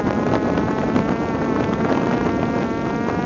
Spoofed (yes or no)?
no